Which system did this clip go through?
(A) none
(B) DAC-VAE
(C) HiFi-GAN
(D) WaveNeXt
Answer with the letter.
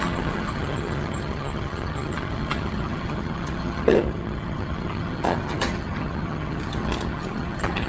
C